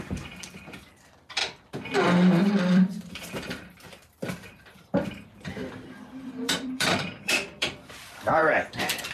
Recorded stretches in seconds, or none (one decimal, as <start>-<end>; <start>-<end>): 1.4-2.6